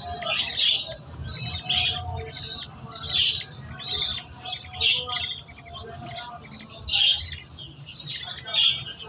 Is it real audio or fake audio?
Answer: real